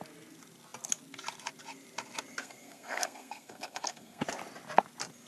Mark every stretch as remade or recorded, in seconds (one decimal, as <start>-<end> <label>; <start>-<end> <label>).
0.0-2.4 recorded; 2.4-4.2 remade; 4.2-5.3 recorded